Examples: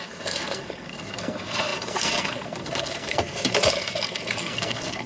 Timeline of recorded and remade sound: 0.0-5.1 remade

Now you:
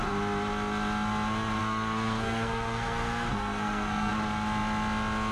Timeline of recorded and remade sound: 0.0-1.6 recorded; 1.6-4.1 remade; 4.1-5.3 recorded

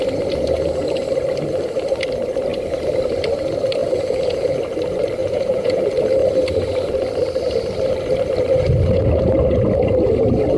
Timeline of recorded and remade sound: 0.0-3.8 recorded; 3.8-4.6 remade; 4.6-5.2 recorded; 5.2-5.8 remade; 5.8-10.6 recorded

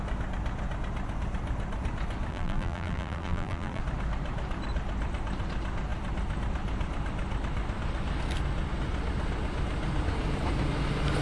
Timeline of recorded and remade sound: 0.0-2.3 recorded; 2.3-3.8 remade; 3.8-11.2 recorded

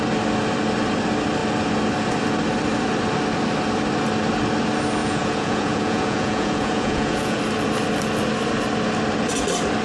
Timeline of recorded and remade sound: 0.0-5.0 recorded; 5.0-7.4 remade; 7.4-9.8 recorded

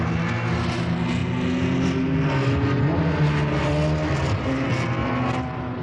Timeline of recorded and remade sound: 0.0-5.8 recorded

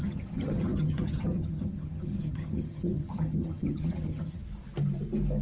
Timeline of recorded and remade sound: 0.0-4.4 remade; 4.4-5.4 recorded